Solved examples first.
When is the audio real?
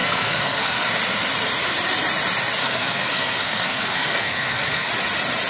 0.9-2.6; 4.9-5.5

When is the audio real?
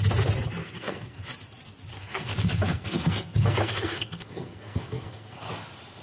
0.0-0.6; 1.2-1.9; 5.5-6.0